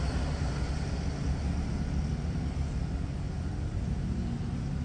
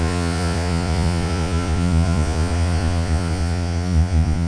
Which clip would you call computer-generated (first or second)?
second